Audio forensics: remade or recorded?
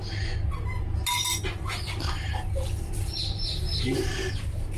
recorded